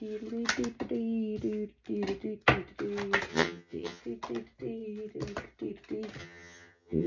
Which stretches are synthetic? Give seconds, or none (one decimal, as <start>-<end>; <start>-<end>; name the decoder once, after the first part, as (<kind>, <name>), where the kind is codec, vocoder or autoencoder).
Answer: 3.3-4.0 (vocoder, HiFi-GAN); 6.2-7.1